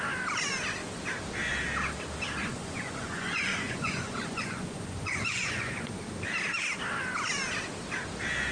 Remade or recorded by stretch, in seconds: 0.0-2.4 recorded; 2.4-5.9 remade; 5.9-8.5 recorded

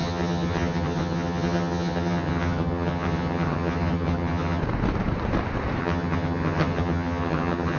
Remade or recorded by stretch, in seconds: 0.0-4.6 remade; 4.6-5.8 recorded; 5.8-7.8 remade

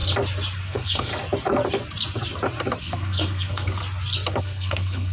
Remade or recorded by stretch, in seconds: 0.0-0.6 recorded; 0.6-1.1 remade; 1.1-2.8 recorded; 2.8-3.8 remade; 3.8-4.4 recorded; 4.4-5.1 remade

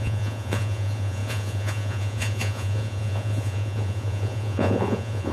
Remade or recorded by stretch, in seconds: 0.0-5.3 remade